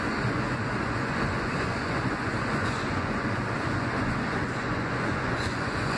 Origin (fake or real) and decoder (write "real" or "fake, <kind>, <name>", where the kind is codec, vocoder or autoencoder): fake, vocoder, Vocos